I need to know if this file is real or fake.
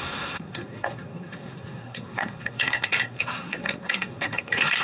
fake